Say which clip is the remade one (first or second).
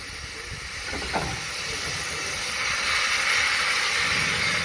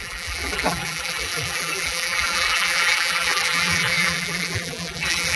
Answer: second